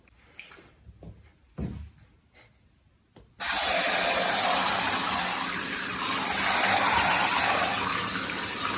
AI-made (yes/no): no